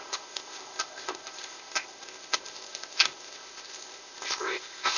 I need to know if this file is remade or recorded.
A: remade